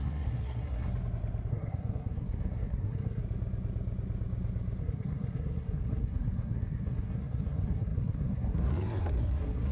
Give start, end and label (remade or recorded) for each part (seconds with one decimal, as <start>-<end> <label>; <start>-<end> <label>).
0.0-0.9 remade; 0.9-1.5 recorded; 1.5-3.2 remade; 3.2-4.8 recorded; 4.8-9.7 remade